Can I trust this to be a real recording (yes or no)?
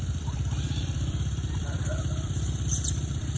no